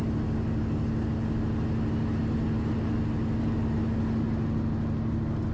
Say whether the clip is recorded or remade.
recorded